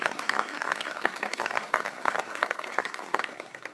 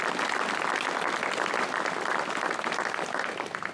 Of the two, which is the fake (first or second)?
first